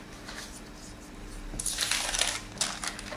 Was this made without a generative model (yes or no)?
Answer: yes